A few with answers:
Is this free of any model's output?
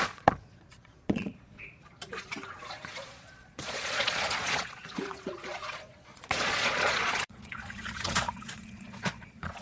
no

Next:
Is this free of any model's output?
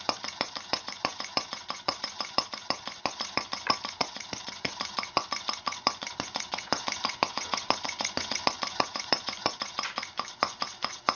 no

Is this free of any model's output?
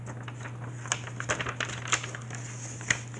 yes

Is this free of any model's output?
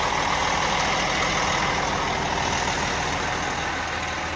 yes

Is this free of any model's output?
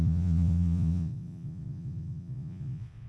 no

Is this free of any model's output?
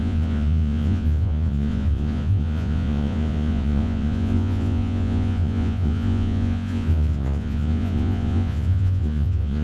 no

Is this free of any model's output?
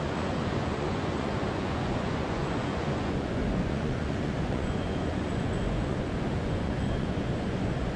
no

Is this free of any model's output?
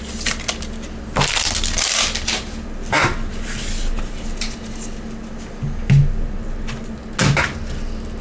yes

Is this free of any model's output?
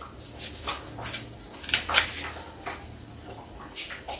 yes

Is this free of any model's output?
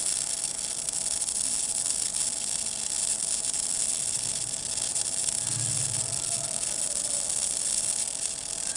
yes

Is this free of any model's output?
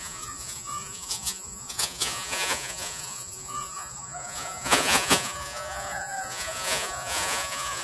no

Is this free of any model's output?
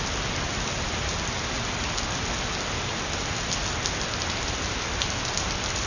yes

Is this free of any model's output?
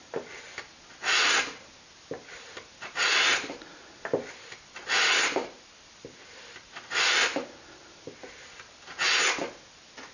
yes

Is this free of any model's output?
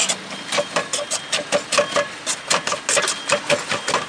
yes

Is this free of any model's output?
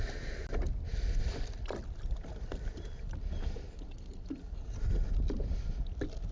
yes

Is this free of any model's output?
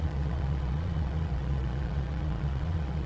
no